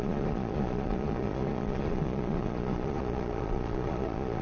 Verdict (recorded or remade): remade